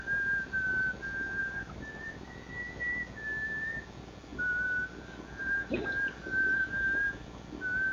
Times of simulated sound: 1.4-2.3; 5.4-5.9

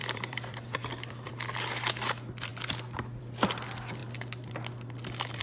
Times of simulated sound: 0.0-1.3

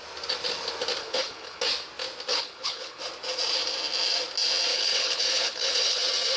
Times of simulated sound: 1.0-1.6; 2.3-3.0; 4.7-6.0

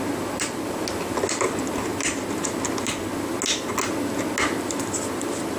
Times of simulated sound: none